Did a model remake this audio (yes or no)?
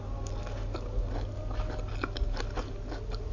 no